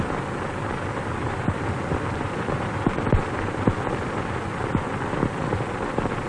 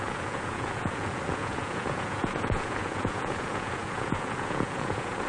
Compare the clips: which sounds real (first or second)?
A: first